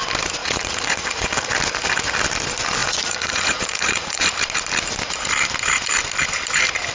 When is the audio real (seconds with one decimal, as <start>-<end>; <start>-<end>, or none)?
0.0-0.4; 1.5-2.8; 4.4-6.9